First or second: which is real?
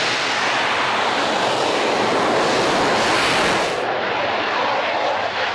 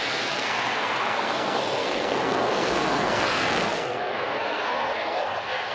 first